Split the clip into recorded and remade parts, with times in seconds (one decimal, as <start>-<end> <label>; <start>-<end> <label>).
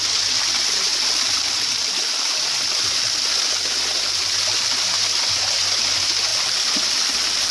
0.0-7.5 recorded